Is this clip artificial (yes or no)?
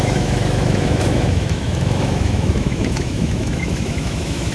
yes